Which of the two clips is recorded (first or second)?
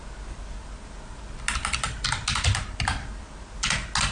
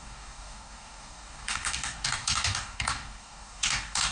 first